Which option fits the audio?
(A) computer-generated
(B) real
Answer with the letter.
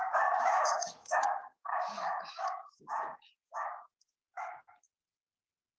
A